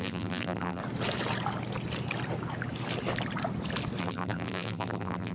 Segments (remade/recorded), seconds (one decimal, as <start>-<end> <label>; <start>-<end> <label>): 0.0-0.8 remade; 0.8-4.0 recorded; 4.0-5.3 remade